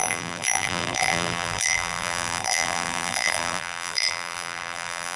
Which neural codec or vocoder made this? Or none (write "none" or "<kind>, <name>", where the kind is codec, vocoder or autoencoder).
vocoder, BigVGAN v2